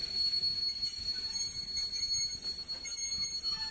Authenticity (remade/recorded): recorded